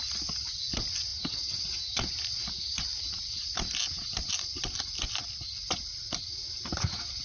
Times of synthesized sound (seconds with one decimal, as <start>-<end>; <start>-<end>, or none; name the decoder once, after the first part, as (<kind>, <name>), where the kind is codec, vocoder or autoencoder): none